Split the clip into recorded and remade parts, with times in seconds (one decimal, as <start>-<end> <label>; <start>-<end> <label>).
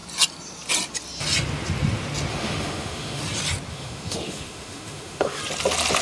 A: 0.0-2.3 recorded; 2.3-3.2 remade; 3.2-3.7 recorded; 3.7-5.4 remade; 5.4-6.0 recorded